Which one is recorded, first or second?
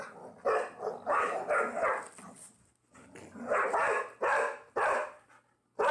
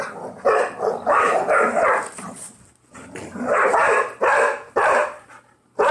first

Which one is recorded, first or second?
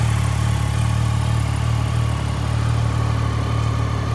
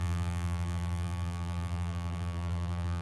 first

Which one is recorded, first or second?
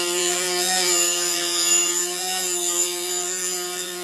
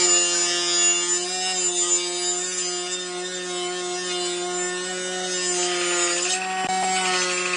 second